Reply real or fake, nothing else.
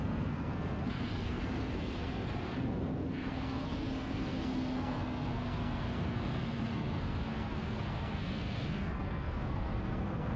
fake